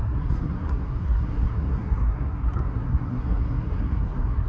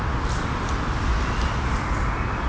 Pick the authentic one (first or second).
second